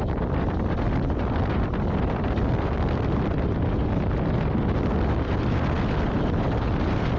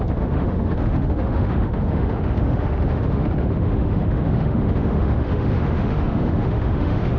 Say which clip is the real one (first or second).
first